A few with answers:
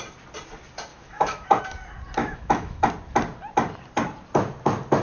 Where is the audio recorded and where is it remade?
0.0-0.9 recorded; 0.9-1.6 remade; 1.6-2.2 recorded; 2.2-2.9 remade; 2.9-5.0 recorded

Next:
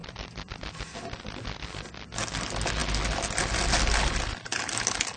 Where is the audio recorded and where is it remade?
0.0-5.2 recorded

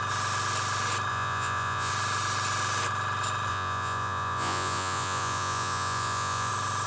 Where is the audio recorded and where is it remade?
0.0-1.1 recorded; 1.1-1.9 remade; 1.9-3.5 recorded; 3.5-6.5 remade; 6.5-6.9 recorded

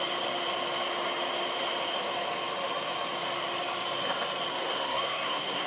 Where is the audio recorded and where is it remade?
0.0-4.5 recorded; 4.5-5.7 remade

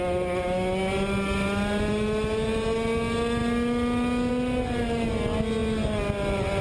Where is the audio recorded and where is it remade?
0.0-6.6 recorded

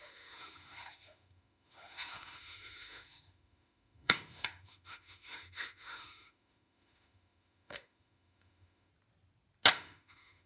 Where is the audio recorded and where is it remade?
0.0-8.9 remade; 8.9-9.7 recorded; 9.7-10.5 remade

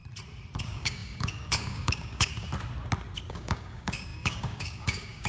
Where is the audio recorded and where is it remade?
0.0-0.6 recorded; 0.6-2.5 remade; 2.5-3.3 recorded; 3.3-5.3 remade

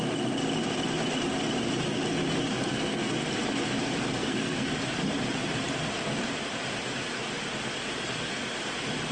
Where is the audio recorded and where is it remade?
0.0-2.5 recorded; 2.5-3.1 remade; 3.1-4.2 recorded; 4.2-4.8 remade; 4.8-9.1 recorded